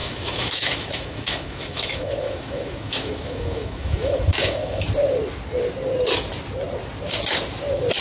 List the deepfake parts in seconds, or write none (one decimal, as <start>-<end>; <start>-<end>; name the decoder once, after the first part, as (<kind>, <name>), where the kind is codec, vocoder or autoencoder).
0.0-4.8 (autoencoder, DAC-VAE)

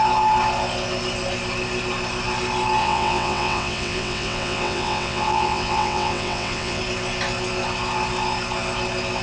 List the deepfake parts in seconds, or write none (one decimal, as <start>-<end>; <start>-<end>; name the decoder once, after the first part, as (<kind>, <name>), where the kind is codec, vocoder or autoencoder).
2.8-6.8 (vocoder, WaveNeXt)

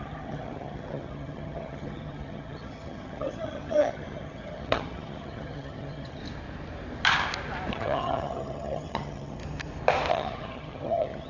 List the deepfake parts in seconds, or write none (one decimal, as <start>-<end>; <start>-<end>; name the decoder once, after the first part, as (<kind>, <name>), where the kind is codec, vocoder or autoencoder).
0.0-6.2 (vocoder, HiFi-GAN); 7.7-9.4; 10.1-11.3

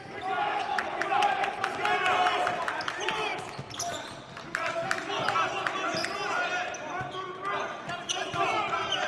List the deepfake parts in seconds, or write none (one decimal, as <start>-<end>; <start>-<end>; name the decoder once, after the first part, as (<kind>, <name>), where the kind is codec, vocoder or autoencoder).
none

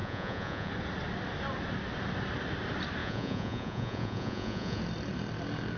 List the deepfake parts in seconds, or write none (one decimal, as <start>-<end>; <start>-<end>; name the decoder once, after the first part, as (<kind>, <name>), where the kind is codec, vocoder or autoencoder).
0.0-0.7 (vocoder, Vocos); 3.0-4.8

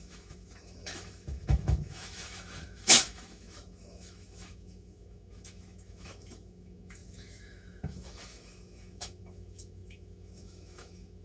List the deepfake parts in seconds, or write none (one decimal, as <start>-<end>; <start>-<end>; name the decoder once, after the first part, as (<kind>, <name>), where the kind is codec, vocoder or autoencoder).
0.0-11.2 (autoencoder, DAC-VAE)